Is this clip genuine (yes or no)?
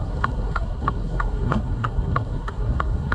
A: no